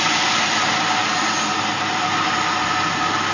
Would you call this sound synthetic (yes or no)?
no